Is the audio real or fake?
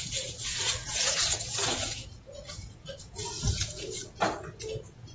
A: fake